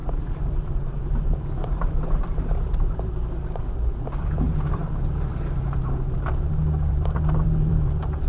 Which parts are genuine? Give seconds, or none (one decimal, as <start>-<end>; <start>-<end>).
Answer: none